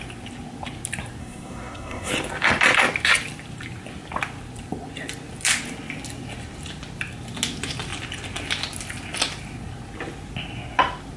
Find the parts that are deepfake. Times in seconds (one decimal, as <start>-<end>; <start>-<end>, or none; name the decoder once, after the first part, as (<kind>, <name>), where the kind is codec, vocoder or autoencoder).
1.2-2.1 (codec, SNAC)